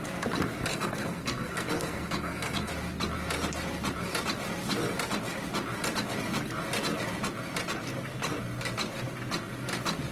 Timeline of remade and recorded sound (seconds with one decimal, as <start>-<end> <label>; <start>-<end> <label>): 0.0-0.7 recorded; 0.7-2.7 remade; 2.7-10.1 recorded